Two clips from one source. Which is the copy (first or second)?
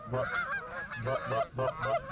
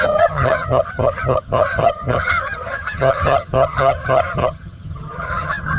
second